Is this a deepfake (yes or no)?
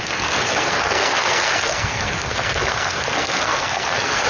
yes